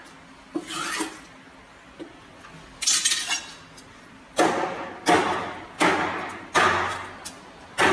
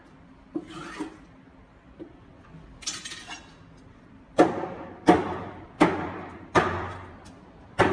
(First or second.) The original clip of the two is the first